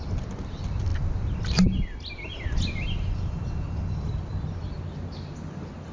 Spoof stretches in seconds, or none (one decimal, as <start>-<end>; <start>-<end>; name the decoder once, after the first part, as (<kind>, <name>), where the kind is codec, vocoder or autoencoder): none